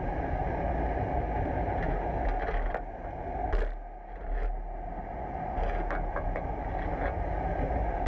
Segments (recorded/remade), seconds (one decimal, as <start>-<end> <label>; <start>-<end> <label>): 0.0-8.1 recorded